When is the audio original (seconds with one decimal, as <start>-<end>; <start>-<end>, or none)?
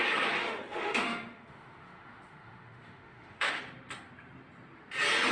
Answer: 0.0-0.4; 3.6-5.3